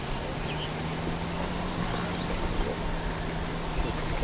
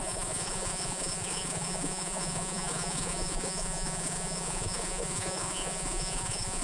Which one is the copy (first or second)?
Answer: second